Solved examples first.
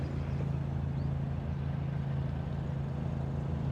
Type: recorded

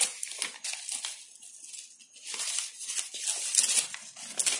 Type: recorded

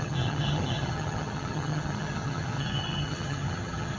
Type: remade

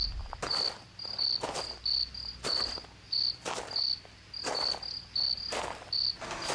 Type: recorded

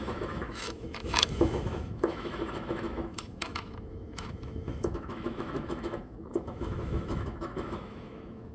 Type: remade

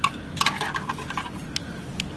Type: recorded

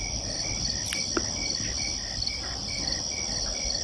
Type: recorded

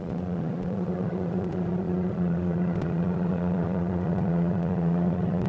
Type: remade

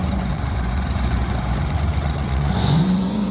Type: remade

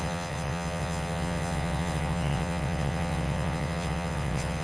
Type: remade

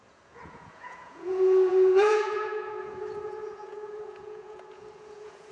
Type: remade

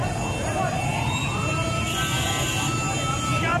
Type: recorded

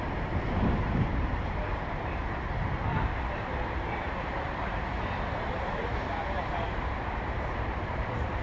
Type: remade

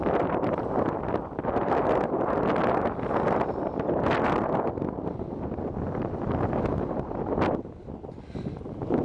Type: recorded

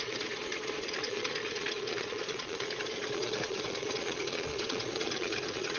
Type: remade